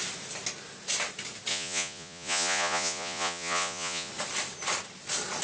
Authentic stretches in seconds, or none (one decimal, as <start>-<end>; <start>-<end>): 0.0-1.5; 4.1-5.4